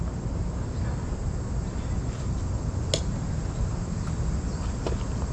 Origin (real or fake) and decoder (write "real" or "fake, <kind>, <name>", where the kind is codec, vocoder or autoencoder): real